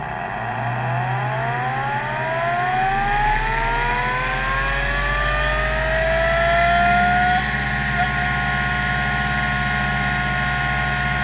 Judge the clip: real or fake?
real